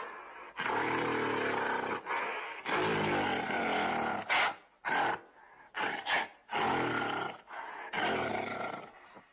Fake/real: real